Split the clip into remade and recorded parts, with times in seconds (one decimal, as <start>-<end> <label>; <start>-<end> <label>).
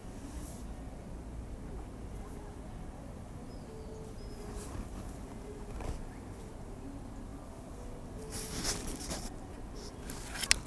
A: 0.0-10.7 recorded